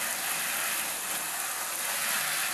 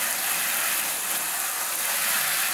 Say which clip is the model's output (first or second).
second